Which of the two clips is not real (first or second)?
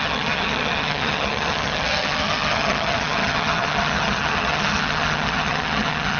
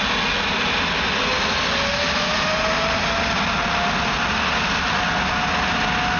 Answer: first